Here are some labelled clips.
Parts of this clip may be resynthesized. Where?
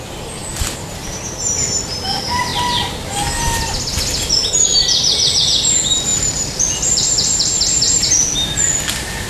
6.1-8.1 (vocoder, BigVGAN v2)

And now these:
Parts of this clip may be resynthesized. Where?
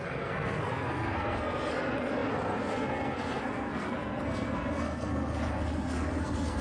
0.0-6.6 (codec, SNAC)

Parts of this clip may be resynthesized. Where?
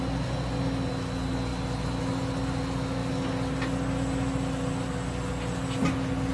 none